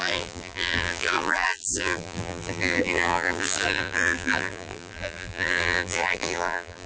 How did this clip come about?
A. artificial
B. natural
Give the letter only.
A